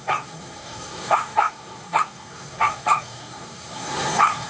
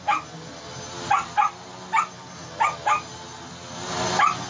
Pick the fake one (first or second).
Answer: first